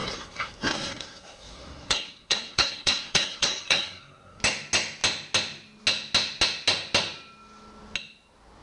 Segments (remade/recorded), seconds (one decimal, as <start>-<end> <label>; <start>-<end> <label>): 0.0-4.4 remade; 4.4-8.6 recorded